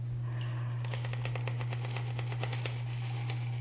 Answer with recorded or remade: recorded